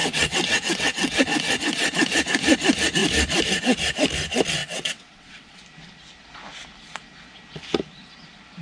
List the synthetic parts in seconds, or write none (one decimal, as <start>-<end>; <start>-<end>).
0.0-1.2; 4.6-5.6